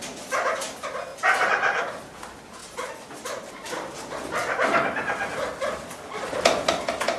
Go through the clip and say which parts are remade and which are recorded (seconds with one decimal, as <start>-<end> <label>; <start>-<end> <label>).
0.0-1.1 remade; 1.1-1.8 recorded; 1.8-2.6 remade; 2.6-3.5 recorded; 3.5-4.4 remade; 4.4-5.0 recorded; 5.0-7.2 remade